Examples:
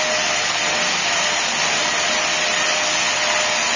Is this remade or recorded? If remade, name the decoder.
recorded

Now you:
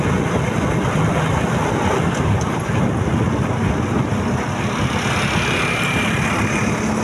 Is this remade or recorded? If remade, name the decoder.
recorded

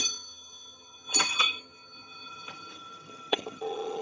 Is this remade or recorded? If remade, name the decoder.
remade, vocoder, HiFi-GAN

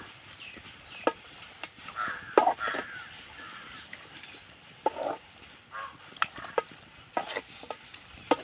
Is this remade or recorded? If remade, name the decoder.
remade, vocoder, BigVGAN v2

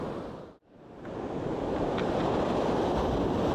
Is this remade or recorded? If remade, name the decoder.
recorded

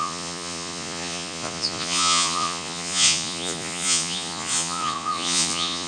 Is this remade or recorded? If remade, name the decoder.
remade, vocoder, Vocos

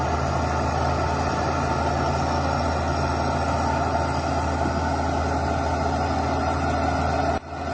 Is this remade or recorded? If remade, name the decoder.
recorded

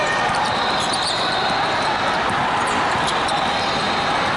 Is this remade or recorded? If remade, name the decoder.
recorded